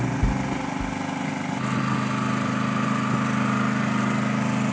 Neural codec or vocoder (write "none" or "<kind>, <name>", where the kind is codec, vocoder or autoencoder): none